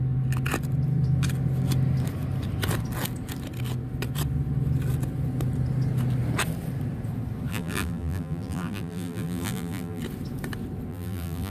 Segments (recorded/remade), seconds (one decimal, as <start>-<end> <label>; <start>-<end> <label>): 0.0-7.5 recorded; 7.5-10.0 remade; 10.0-10.9 recorded; 10.9-11.5 remade